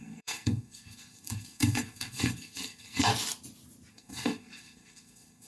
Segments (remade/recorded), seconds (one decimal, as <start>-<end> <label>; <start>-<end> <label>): 0.0-3.1 remade; 3.1-3.9 recorded; 3.9-5.5 remade